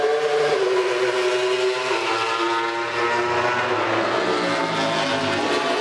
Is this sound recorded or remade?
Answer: recorded